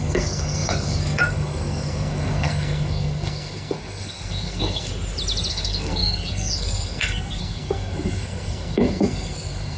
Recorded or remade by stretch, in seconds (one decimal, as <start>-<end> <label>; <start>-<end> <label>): 0.0-4.9 remade; 4.9-5.5 recorded; 5.5-9.8 remade